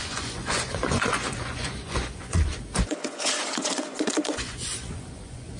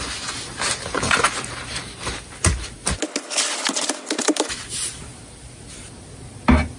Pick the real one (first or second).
second